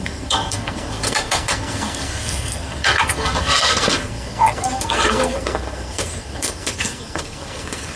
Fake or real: fake